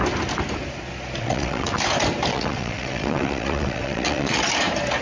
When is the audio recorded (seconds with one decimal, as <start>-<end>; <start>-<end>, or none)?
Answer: 0.0-1.2; 1.8-2.3; 4.5-5.0

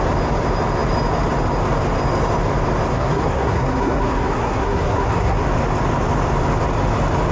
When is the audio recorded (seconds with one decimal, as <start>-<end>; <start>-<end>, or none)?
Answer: 0.0-2.9; 5.4-7.3

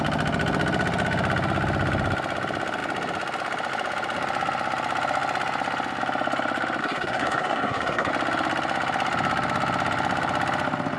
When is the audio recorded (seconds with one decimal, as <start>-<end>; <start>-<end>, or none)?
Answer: 0.0-6.8; 8.1-11.0

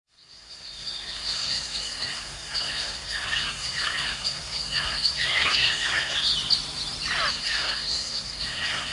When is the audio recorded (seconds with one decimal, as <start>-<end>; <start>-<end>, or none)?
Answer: 6.3-7.3